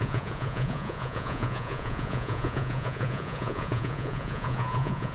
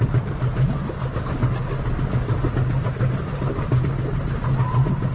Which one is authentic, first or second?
second